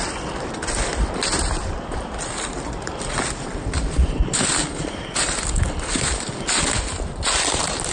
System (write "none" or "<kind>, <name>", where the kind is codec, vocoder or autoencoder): none